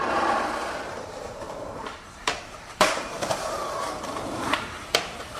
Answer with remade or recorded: remade